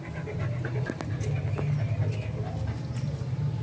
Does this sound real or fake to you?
real